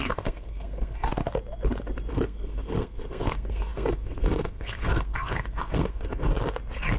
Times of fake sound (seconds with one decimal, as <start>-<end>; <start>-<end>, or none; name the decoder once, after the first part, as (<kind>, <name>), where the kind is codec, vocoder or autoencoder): 0.0-1.1 (codec, SNAC); 2.1-6.3